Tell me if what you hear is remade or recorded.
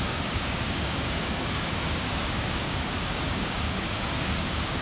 remade